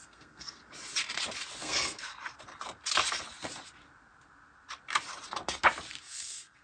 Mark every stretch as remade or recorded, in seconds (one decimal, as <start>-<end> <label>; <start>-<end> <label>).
0.0-0.6 remade; 0.6-1.6 recorded; 1.6-2.0 remade; 2.0-6.0 recorded; 6.0-6.6 remade